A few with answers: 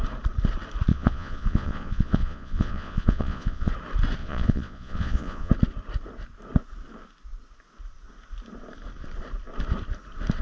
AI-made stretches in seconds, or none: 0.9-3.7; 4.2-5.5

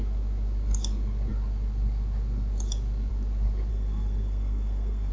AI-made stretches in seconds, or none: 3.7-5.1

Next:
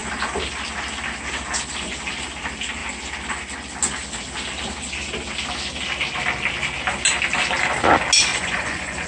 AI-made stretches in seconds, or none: 8.3-9.1

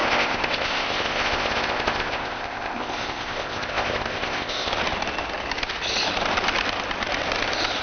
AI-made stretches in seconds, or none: 0.0-4.7

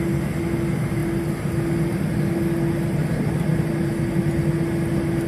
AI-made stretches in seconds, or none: none

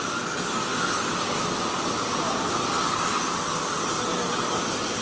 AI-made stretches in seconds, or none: none